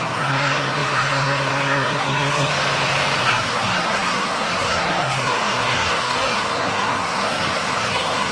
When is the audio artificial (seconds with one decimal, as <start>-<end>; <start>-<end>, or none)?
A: 0.0-2.5; 3.2-8.3